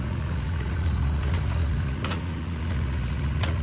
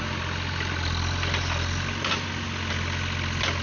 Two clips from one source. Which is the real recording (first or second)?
second